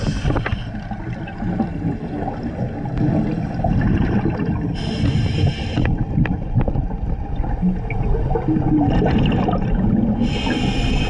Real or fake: real